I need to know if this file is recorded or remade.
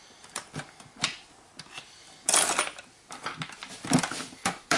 recorded